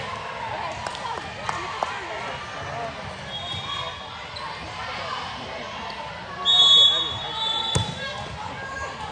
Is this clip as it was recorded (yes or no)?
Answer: yes